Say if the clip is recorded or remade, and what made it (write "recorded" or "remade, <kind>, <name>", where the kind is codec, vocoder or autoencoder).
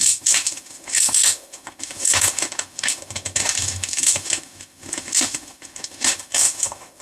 remade, autoencoder, DAC-VAE